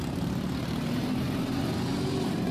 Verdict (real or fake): fake